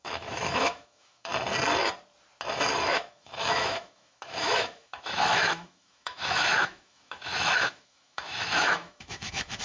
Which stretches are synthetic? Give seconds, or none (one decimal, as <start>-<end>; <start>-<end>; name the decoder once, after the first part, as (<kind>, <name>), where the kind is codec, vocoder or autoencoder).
0.0-1.3 (autoencoder, DAC-VAE); 2.9-9.6

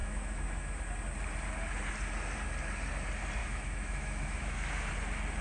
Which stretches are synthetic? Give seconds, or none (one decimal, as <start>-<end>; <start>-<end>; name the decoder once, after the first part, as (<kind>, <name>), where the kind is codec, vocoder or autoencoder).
0.0-0.8 (autoencoder, DAC-VAE); 3.4-4.9

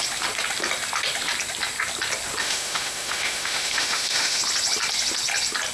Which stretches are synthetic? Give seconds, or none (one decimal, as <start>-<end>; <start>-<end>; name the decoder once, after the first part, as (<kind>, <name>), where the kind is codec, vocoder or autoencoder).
2.4-4.4 (autoencoder, DAC-VAE)

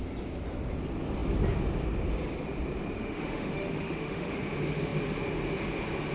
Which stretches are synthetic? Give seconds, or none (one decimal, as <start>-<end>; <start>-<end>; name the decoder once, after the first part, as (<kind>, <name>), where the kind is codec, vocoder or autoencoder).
3.0-4.4 (autoencoder, DAC-VAE)